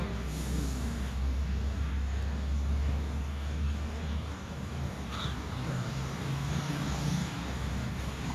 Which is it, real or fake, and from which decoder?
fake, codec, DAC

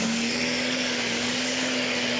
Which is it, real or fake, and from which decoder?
fake, codec, DAC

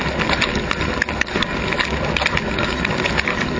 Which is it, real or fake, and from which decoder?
real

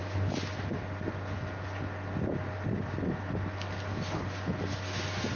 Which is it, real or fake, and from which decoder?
real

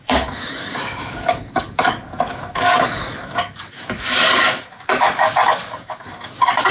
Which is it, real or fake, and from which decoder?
fake, codec, DAC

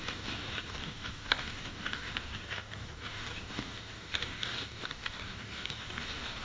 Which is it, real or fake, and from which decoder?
fake, codec, DAC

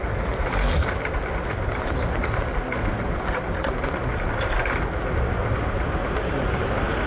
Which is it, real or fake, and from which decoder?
real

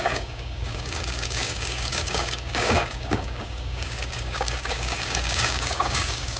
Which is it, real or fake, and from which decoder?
fake, codec, DAC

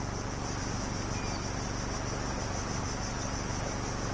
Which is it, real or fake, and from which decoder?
real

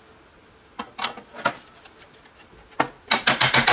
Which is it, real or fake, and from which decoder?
real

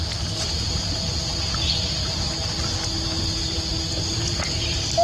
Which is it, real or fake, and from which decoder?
real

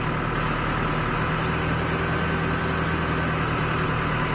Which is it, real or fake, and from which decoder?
real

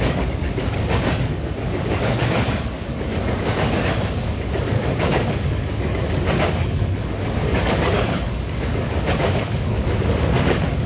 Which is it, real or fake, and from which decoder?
fake, codec, DAC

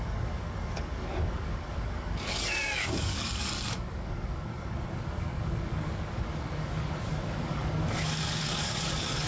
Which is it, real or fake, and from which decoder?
fake, codec, DAC